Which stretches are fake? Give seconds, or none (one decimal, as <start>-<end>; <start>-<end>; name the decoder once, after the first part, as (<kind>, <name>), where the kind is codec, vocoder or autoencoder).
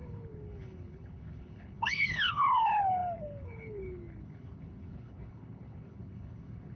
0.0-6.7 (codec, HILCodec)